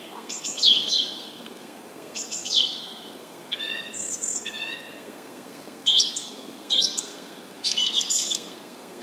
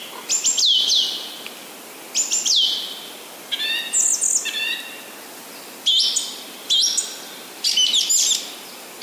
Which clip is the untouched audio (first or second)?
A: second